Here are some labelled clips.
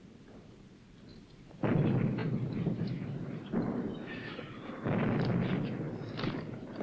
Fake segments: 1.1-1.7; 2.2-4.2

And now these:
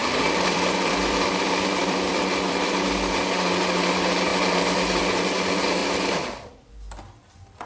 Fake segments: 0.0-3.1; 5.8-6.7